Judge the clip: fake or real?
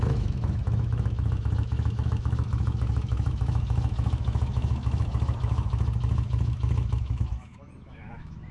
fake